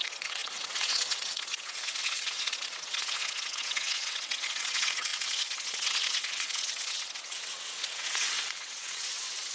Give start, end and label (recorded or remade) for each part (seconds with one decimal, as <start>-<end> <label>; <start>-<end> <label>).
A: 0.0-9.5 remade